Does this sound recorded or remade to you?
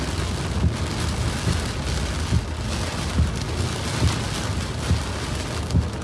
recorded